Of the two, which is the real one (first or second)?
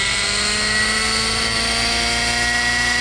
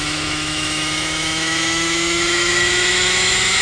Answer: first